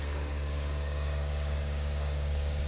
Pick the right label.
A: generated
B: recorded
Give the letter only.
A